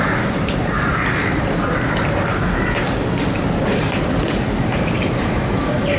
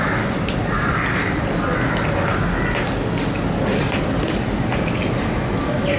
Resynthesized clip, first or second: first